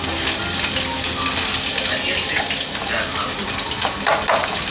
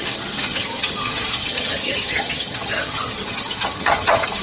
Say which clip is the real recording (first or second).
first